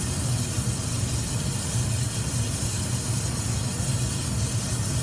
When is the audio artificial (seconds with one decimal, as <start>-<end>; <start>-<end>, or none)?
none

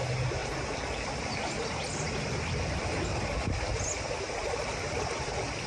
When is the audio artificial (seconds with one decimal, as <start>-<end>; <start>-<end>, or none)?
none